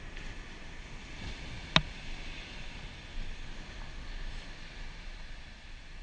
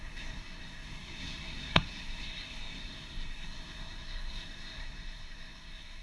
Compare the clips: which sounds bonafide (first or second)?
first